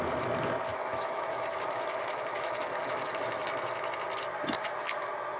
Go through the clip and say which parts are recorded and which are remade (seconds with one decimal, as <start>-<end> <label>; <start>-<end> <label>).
0.0-0.7 recorded; 0.7-3.2 remade; 3.2-5.4 recorded